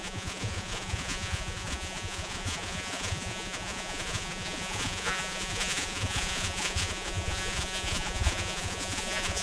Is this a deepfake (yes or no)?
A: yes